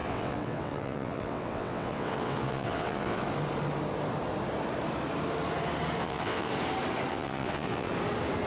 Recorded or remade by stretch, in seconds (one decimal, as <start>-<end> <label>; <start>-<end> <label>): 0.0-3.2 remade; 3.2-6.0 recorded; 6.0-6.5 remade; 6.5-7.1 recorded; 7.1-7.9 remade; 7.9-8.5 recorded